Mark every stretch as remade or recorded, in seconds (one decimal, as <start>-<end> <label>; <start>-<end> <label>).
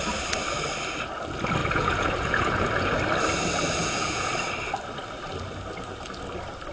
0.0-1.6 recorded; 1.6-3.0 remade; 3.0-3.8 recorded; 3.8-4.3 remade; 4.3-6.7 recorded